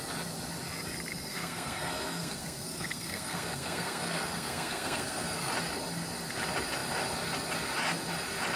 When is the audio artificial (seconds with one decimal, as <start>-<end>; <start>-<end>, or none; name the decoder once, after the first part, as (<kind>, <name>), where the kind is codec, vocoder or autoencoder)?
1.1-5.5 (codec, SNAC)